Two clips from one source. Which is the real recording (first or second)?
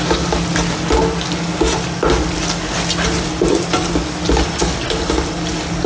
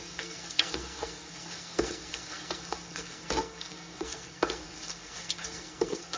first